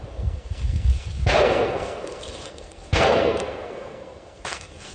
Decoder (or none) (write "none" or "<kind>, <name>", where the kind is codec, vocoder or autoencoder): codec, SNAC